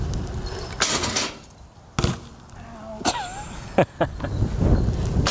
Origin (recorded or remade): recorded